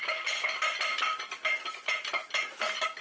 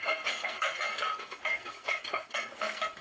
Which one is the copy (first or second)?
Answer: second